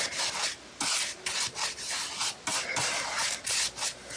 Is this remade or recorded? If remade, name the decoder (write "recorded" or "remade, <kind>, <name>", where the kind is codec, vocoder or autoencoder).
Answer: recorded